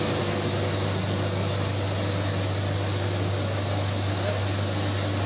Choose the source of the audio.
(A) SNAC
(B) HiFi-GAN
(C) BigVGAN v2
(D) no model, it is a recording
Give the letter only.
D